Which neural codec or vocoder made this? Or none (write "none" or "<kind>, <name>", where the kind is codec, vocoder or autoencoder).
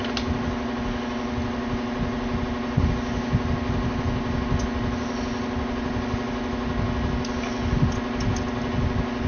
none